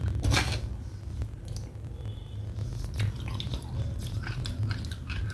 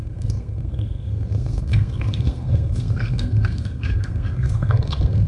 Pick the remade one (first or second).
second